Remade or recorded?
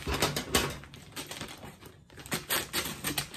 recorded